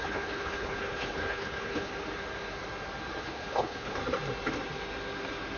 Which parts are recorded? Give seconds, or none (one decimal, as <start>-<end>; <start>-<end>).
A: 1.9-3.2; 4.0-5.6